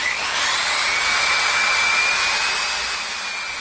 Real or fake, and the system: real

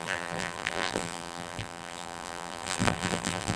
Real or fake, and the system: fake, vocoder, BigVGAN v2